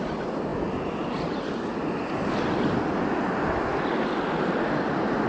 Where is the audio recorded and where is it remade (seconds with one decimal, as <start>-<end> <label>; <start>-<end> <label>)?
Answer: 0.0-5.3 recorded